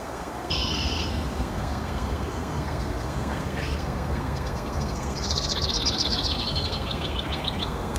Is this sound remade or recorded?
remade